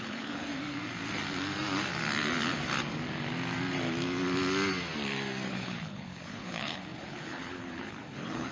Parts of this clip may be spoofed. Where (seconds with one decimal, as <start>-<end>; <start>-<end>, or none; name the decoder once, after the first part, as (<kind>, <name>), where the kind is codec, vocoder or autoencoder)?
0.0-0.5 (codec, HILCodec); 5.5-8.5